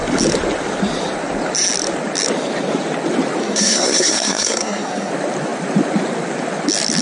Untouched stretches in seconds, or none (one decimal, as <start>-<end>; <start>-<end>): 0.0-3.4; 5.1-7.0